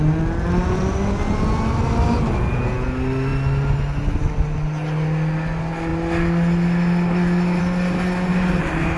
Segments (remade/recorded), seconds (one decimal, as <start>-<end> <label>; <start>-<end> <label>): 0.0-9.0 recorded